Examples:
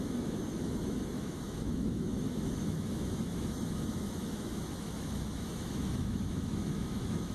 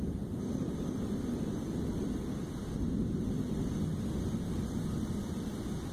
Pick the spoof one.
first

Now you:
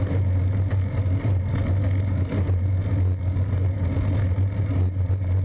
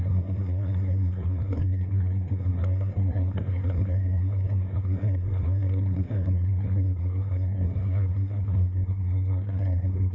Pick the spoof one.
second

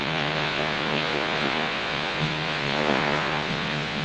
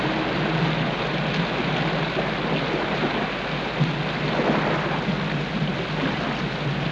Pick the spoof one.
first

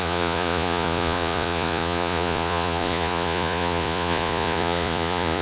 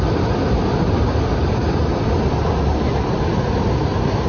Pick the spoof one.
first